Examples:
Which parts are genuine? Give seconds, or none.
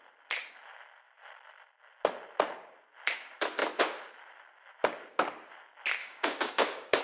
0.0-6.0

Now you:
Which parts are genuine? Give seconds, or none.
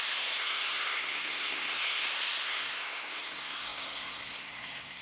none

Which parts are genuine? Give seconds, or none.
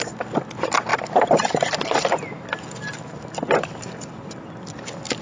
0.0-5.2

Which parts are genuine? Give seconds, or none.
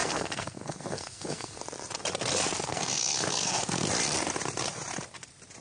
1.6-2.7; 3.6-5.6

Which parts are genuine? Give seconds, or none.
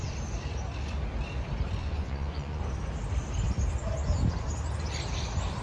0.0-1.8; 2.6-5.6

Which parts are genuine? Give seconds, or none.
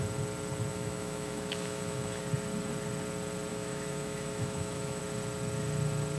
0.0-0.7; 2.2-3.5; 5.0-6.2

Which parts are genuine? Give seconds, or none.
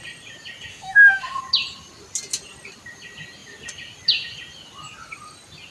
0.0-0.7; 1.4-5.7